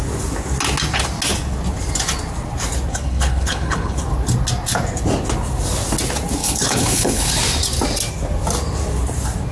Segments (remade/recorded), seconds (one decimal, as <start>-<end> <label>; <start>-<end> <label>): 0.0-2.9 recorded; 2.9-4.0 remade; 4.0-6.4 recorded; 6.4-7.3 remade; 7.3-9.5 recorded